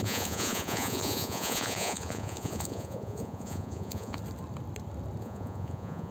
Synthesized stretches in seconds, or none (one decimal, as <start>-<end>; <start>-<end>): 0.0-4.2; 5.2-6.1

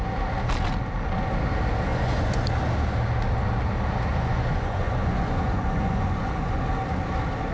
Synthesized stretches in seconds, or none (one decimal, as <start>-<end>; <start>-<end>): 1.9-2.5; 4.1-6.6